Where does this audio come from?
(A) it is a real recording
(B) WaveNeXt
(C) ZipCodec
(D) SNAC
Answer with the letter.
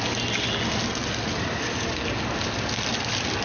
A